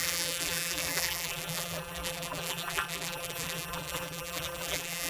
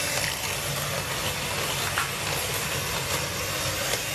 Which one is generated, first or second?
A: first